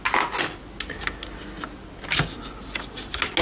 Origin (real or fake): real